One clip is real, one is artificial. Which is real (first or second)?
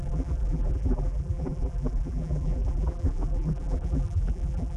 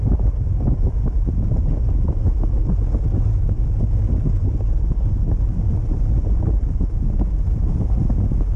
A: second